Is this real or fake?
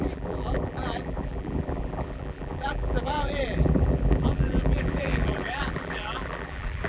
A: fake